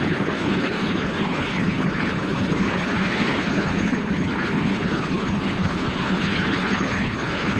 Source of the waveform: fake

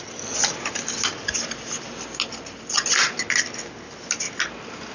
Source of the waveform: real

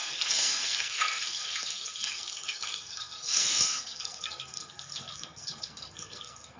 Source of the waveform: fake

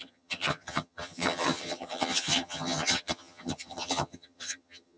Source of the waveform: fake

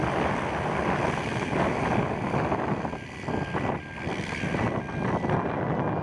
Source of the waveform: real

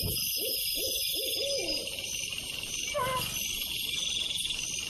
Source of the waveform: real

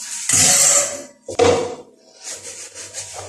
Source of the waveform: real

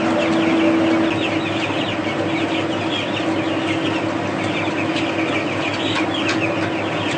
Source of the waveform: real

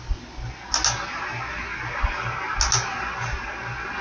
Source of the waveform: real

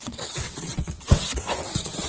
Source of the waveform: fake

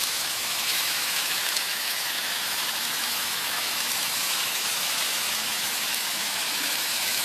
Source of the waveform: fake